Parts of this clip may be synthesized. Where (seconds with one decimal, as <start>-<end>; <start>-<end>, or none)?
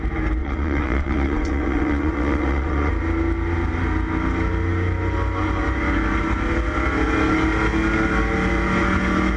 0.4-2.9